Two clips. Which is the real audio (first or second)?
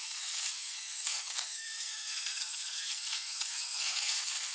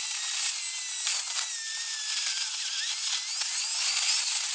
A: second